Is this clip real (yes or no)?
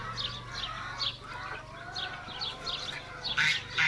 yes